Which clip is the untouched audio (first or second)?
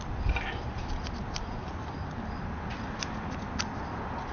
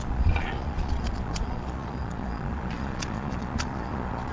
first